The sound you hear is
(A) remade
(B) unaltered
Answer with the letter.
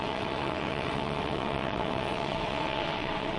A